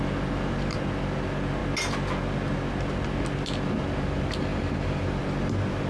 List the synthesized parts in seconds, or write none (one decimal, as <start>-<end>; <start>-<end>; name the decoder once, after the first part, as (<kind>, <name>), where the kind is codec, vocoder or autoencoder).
none